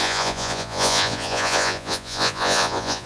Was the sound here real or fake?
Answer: fake